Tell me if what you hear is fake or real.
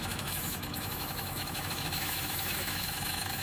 fake